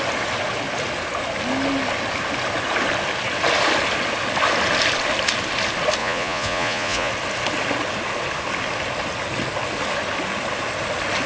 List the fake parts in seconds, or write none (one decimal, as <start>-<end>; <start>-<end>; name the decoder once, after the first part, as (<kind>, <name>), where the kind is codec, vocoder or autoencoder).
6.0-7.1 (vocoder, Vocos)